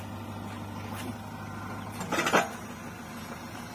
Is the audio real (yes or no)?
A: yes